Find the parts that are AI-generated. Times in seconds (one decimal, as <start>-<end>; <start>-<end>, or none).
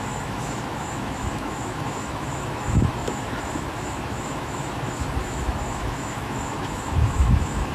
0.0-7.7